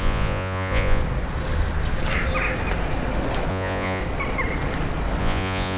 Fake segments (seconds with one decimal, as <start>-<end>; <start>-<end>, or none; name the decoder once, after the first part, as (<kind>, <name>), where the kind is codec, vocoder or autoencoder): 0.0-1.0 (vocoder, Vocos); 3.5-4.0; 5.2-5.8